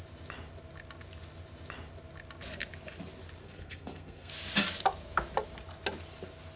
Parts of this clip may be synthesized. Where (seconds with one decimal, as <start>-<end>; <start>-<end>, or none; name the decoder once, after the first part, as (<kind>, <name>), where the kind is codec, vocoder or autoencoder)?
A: 3.4-4.3 (codec, SNAC)